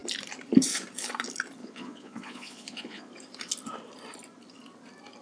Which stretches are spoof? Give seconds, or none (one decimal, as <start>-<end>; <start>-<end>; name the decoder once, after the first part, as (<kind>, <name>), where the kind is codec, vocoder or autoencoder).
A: 1.6-3.1 (vocoder, Vocos)